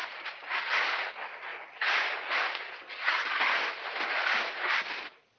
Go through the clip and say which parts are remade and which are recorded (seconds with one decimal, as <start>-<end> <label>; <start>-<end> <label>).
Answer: 0.0-5.4 recorded